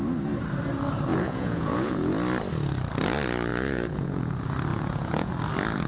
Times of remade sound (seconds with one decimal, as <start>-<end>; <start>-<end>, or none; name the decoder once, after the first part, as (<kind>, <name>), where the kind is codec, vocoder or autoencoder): 1.1-2.1 (vocoder, Vocos); 3.5-4.3; 4.7-5.3